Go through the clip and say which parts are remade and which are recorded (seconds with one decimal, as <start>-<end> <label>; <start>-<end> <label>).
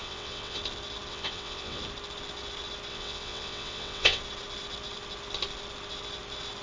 0.0-0.6 remade; 0.6-1.1 recorded; 1.1-1.8 remade; 1.8-2.9 recorded; 2.9-4.2 remade; 4.2-6.6 recorded